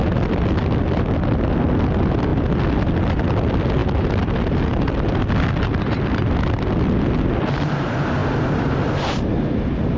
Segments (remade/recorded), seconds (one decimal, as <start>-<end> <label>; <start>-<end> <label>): 0.0-10.0 recorded